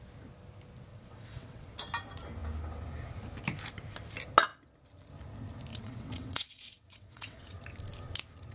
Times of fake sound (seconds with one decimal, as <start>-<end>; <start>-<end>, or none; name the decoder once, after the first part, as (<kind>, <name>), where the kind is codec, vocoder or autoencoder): 0.9-1.7 (vocoder, WaveNeXt); 5.7-7.4